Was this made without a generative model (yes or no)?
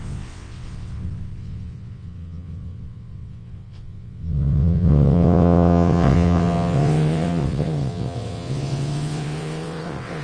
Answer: no